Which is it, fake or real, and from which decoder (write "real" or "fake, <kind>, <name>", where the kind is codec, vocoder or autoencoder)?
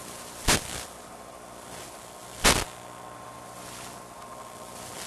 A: real